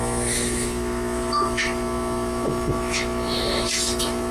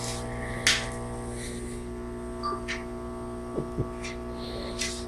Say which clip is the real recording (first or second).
second